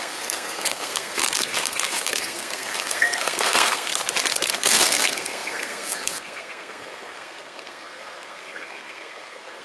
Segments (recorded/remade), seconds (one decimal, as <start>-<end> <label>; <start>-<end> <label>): 0.0-3.9 remade; 3.9-4.5 recorded; 4.5-9.6 remade